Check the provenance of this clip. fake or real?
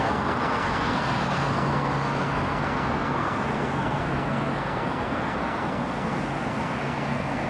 fake